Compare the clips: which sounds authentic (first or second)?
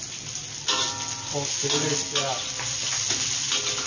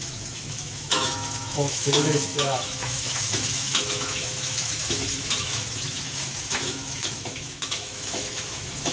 first